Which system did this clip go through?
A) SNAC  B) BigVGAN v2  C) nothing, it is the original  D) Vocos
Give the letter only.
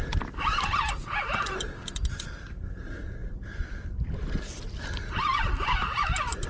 C